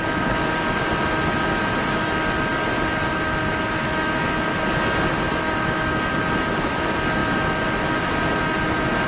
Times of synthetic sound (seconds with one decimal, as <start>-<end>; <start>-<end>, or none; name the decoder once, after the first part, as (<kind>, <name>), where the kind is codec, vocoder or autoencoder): none